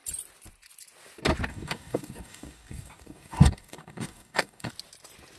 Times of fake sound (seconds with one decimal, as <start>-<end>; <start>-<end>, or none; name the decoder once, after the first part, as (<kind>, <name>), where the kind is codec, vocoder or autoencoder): 1.5-4.7 (codec, DAC)